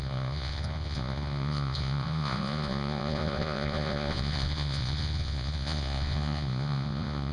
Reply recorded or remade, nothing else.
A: remade